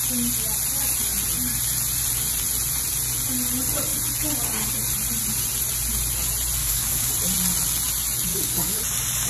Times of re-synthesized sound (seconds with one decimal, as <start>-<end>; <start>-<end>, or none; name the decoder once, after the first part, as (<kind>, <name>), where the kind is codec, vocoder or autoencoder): 6.6-7.1 (codec, DAC); 8.3-8.8